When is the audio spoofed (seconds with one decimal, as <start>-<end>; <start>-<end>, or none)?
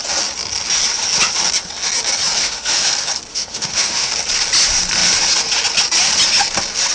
2.4-2.9; 3.3-4.1